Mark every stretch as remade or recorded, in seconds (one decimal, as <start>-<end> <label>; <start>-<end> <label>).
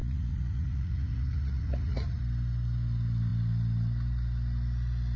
0.0-2.2 remade; 2.2-5.2 recorded